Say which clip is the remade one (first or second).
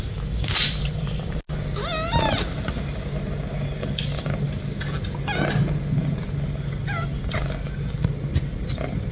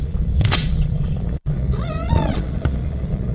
second